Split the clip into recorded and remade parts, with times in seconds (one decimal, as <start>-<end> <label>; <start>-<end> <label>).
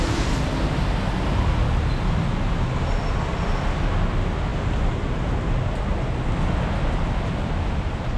0.0-8.2 recorded